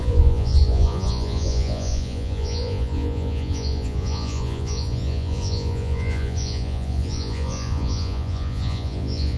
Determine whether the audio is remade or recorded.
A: remade